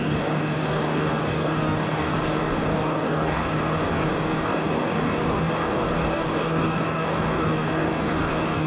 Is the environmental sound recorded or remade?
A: remade